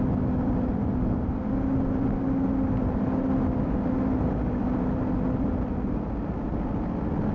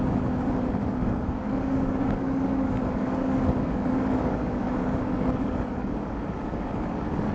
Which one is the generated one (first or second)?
second